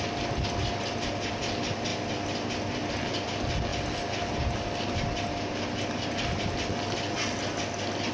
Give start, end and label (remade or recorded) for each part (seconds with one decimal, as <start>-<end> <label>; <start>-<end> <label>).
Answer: 0.0-8.1 recorded